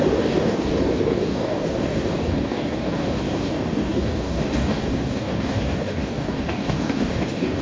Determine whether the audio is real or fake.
fake